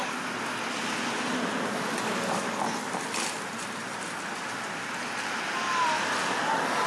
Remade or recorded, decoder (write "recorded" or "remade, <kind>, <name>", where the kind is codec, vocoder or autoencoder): recorded